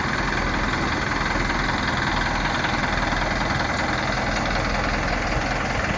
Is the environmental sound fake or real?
real